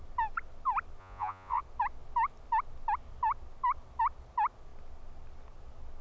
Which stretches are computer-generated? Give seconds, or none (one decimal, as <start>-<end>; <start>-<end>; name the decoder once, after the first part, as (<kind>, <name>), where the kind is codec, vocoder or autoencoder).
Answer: 1.0-1.6 (vocoder, Vocos)